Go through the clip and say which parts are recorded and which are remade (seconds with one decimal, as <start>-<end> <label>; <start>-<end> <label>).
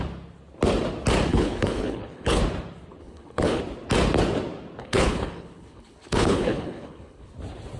0.0-1.3 recorded; 1.3-2.4 remade; 2.4-3.0 recorded; 3.0-3.6 remade; 3.6-4.8 recorded; 4.8-7.3 remade; 7.3-7.8 recorded